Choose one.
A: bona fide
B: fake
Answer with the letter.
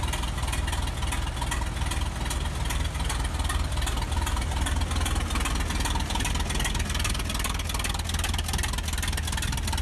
A